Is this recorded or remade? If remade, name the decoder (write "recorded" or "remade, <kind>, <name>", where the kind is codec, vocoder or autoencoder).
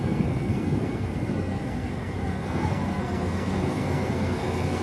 remade, codec, SNAC